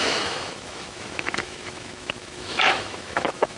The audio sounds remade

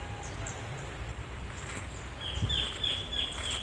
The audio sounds recorded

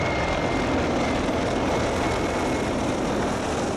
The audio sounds recorded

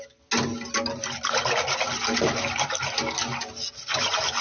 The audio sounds recorded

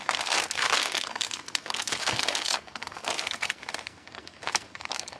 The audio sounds remade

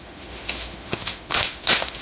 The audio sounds remade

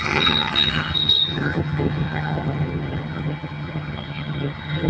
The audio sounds remade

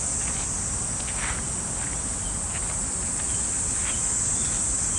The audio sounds recorded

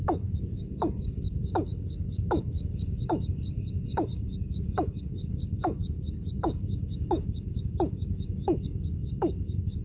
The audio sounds remade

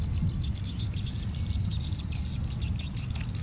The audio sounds recorded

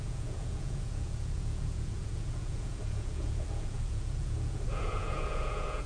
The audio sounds remade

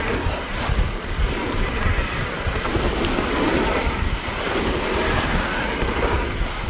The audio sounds recorded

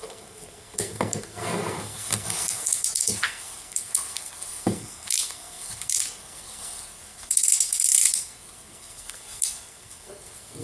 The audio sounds remade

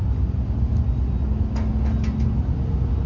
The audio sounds recorded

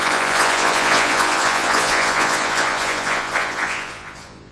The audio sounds remade